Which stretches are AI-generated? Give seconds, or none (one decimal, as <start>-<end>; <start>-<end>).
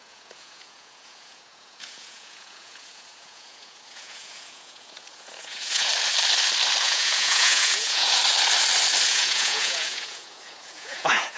0.0-5.9; 6.8-8.2; 9.1-11.4